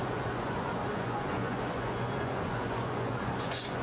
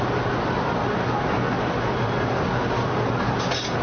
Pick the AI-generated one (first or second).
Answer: first